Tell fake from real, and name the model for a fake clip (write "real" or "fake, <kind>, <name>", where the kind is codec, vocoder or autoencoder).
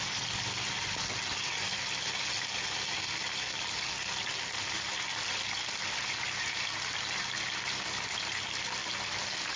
real